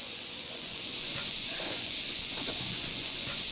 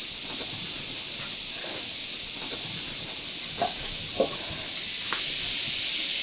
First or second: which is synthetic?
first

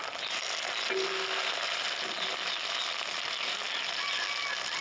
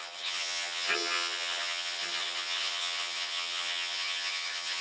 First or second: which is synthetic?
second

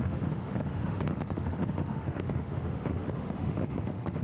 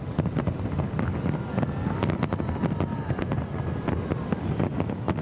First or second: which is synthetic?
first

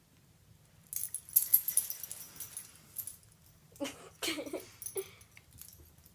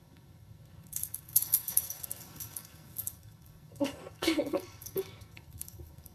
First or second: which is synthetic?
second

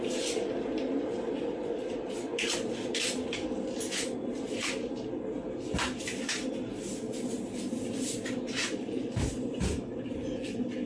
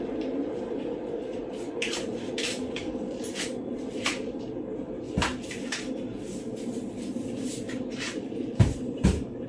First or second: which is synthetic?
second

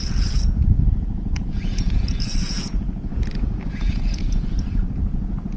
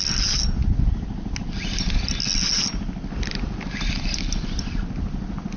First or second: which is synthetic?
first